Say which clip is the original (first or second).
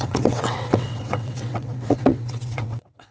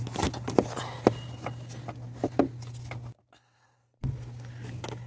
second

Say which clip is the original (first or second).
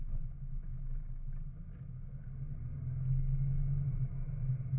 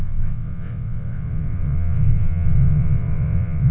first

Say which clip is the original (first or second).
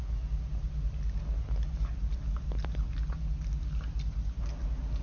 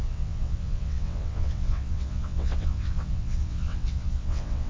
first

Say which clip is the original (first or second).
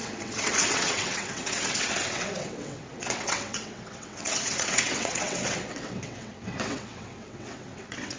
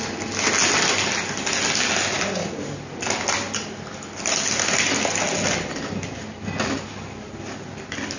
second